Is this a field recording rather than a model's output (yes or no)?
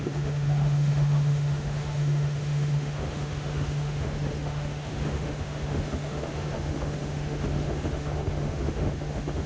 no